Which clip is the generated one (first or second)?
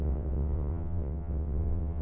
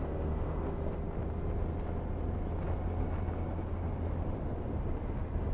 first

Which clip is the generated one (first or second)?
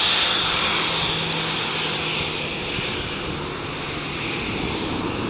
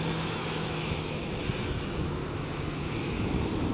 second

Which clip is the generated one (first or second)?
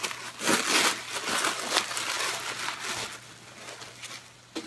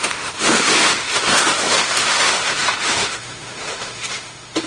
second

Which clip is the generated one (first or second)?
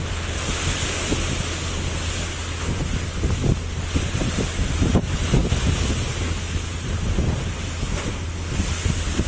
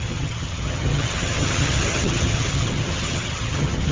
second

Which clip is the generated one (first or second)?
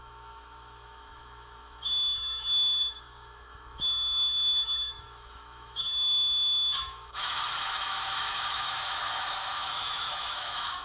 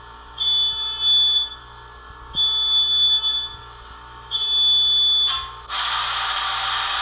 first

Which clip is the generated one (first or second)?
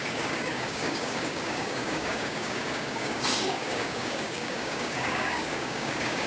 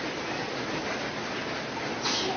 first